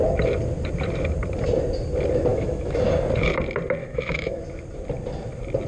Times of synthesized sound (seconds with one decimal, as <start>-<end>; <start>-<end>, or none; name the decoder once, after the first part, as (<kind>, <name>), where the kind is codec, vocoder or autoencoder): 2.3-2.8 (autoencoder, DAC-VAE); 3.8-4.4